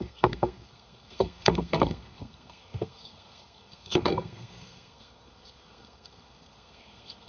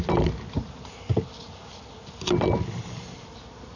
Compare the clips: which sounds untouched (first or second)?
second